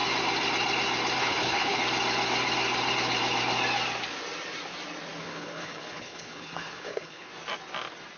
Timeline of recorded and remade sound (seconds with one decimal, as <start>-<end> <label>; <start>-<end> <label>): 0.0-1.2 recorded; 1.2-1.8 remade; 1.8-5.2 recorded; 5.2-7.3 remade; 7.3-8.2 recorded